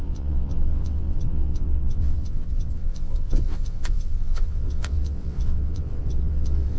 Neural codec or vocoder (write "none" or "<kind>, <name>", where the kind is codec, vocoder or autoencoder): vocoder, WaveNeXt